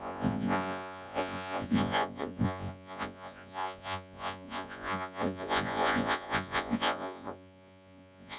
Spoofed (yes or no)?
yes